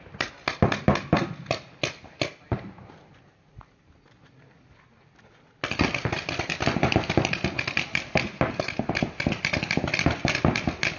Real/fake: real